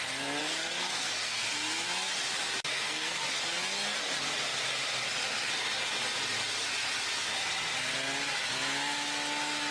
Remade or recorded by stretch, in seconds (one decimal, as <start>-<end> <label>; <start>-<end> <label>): 0.0-0.4 recorded; 0.4-1.4 remade; 1.4-2.7 recorded; 2.7-3.2 remade; 3.2-9.7 recorded